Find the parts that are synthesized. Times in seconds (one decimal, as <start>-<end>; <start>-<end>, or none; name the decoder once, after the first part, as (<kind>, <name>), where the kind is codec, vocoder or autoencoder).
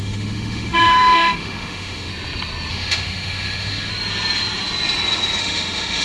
0.0-2.1 (autoencoder, DAC-VAE); 2.7-3.9; 5.4-6.0